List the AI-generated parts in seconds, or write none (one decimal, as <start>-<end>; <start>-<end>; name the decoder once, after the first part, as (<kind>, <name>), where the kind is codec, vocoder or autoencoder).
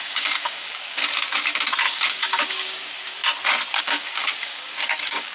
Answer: 0.0-1.0 (codec, DAC); 1.9-3.2; 3.8-5.3